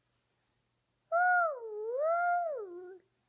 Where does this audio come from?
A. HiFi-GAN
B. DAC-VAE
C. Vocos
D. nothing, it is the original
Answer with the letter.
D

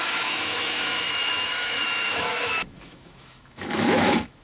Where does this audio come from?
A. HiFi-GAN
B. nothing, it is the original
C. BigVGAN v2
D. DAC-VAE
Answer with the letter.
D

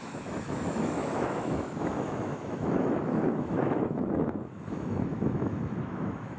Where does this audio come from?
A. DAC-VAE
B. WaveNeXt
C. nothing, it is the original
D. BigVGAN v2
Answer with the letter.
A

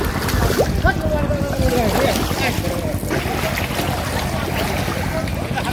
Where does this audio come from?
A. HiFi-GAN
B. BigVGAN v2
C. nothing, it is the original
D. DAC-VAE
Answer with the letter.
C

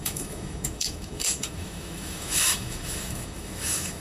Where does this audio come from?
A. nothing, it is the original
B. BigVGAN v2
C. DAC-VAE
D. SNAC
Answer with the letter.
C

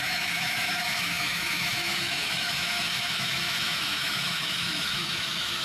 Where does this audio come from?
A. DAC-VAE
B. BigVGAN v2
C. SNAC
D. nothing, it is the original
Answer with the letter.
A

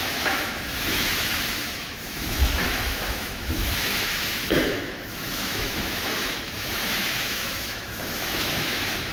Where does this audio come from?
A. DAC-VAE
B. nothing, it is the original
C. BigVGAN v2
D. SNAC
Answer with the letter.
A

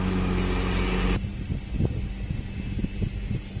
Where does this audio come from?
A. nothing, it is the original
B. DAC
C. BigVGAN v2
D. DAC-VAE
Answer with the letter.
A